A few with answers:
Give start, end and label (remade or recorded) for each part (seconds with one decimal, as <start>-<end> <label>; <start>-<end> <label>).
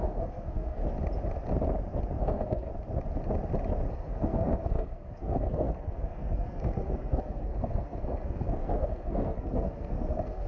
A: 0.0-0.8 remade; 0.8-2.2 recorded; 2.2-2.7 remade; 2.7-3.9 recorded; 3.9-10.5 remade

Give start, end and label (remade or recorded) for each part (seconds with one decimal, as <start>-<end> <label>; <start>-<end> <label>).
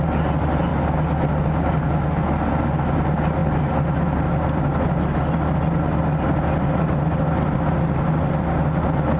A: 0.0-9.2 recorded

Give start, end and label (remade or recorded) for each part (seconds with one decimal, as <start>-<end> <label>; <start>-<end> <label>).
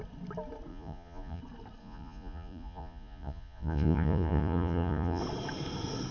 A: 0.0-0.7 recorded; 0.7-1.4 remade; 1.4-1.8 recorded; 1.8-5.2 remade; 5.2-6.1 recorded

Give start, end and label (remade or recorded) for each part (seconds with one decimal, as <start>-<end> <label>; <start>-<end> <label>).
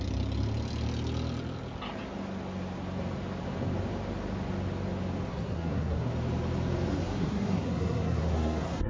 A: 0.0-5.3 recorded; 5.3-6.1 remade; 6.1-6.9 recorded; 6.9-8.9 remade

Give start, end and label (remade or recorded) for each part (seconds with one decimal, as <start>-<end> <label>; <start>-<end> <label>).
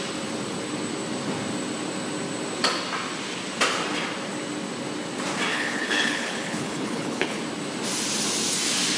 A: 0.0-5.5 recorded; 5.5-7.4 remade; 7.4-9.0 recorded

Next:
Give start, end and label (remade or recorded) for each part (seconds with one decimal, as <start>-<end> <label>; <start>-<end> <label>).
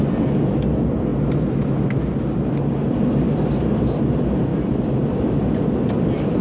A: 0.0-4.5 recorded; 4.5-5.6 remade; 5.6-6.4 recorded